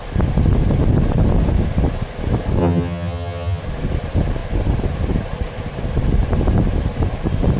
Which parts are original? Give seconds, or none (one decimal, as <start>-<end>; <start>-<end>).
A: 0.0-2.6; 3.6-7.6